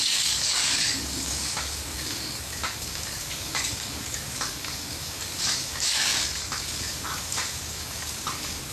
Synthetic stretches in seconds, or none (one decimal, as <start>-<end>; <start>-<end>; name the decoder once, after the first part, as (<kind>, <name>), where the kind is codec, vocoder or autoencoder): 0.0-8.7 (codec, DAC)